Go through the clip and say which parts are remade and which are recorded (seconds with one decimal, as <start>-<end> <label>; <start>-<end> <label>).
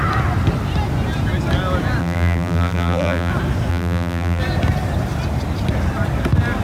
0.0-2.0 recorded; 2.0-3.3 remade; 3.3-3.7 recorded; 3.7-4.4 remade; 4.4-6.6 recorded